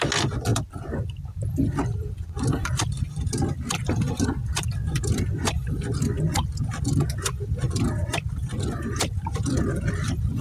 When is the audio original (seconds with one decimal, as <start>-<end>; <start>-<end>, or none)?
0.0-0.5; 5.8-10.4